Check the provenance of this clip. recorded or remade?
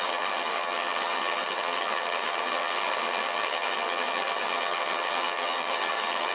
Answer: remade